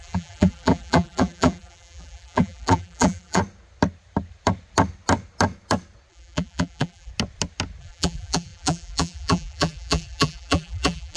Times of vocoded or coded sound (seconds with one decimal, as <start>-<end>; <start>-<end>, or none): 0.0-3.4; 6.1-7.1; 7.8-11.2